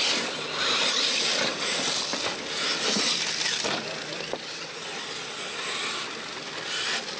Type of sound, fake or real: real